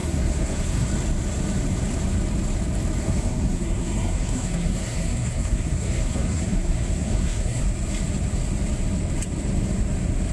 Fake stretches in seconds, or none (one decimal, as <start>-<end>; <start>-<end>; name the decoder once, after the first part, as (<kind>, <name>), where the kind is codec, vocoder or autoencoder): 0.0-0.9 (codec, SNAC); 3.0-7.6